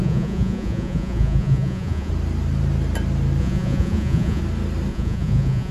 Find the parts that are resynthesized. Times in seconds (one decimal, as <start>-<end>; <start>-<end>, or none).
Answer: 0.0-2.1; 3.4-4.4; 4.9-5.7